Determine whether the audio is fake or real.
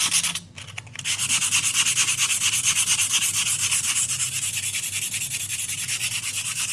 real